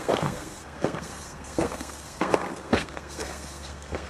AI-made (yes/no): yes